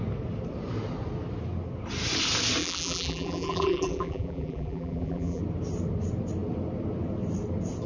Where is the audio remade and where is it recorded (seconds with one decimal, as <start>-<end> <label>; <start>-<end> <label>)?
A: 0.0-2.6 recorded; 2.6-5.4 remade; 5.4-7.9 recorded